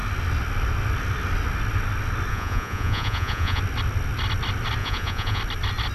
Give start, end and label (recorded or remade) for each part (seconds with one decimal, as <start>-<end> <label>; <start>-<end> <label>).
0.0-2.3 recorded; 2.3-3.6 remade; 3.6-4.8 recorded; 4.8-5.4 remade; 5.4-5.9 recorded